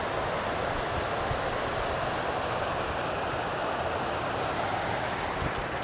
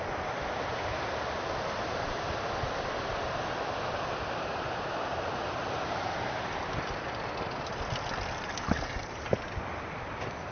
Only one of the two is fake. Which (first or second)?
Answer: second